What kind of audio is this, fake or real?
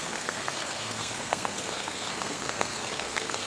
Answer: fake